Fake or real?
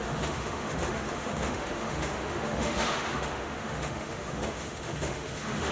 fake